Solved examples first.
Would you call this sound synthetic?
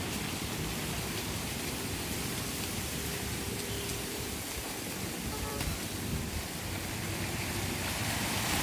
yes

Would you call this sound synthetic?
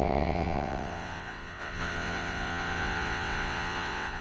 yes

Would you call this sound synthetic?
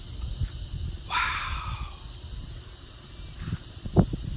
no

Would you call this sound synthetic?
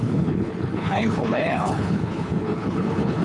yes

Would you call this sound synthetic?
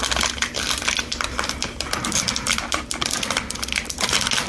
no